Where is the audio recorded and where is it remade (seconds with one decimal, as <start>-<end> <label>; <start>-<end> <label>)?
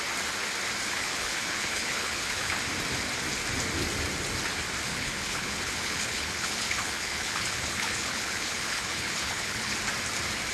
0.0-1.0 recorded; 1.0-2.6 remade; 2.6-4.9 recorded; 4.9-9.7 remade; 9.7-10.5 recorded